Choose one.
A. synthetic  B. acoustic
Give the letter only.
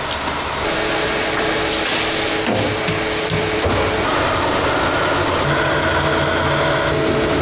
B